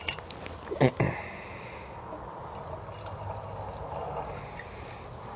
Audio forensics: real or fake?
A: real